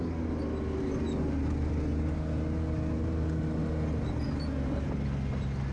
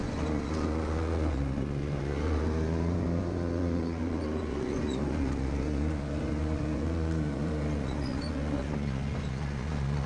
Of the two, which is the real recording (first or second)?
first